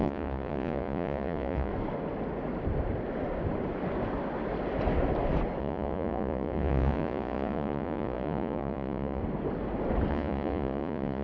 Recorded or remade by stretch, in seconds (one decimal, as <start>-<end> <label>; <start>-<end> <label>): 0.0-1.7 remade; 1.7-5.6 recorded; 5.6-9.2 remade; 9.2-10.1 recorded; 10.1-11.2 remade